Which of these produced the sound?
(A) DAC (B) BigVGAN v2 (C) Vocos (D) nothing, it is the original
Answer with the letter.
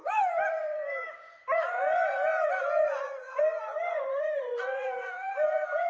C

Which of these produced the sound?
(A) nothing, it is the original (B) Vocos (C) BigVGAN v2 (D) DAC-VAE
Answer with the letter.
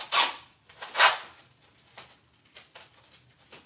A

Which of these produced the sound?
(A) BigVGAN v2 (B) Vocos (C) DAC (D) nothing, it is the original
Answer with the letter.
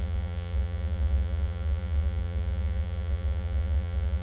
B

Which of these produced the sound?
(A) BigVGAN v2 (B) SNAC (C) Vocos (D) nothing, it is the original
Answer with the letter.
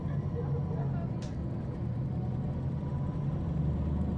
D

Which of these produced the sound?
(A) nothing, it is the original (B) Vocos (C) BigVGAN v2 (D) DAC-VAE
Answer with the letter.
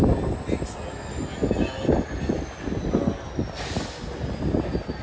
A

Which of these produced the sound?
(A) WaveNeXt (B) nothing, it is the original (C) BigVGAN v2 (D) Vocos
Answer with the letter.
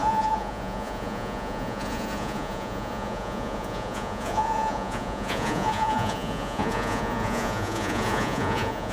D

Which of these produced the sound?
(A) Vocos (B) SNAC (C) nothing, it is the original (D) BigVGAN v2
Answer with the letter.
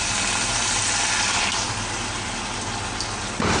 C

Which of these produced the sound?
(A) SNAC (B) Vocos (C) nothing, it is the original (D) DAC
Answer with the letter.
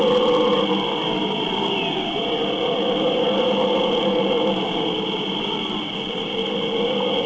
C